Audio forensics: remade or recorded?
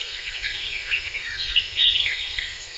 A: remade